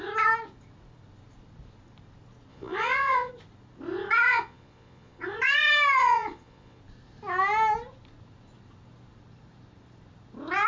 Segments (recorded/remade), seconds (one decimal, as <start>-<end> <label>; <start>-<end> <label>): 0.0-2.5 recorded; 2.5-3.3 remade; 3.3-4.3 recorded; 4.3-5.2 remade; 5.2-6.0 recorded; 6.0-6.8 remade; 6.8-10.7 recorded